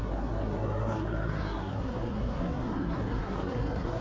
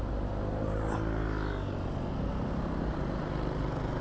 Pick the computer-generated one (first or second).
first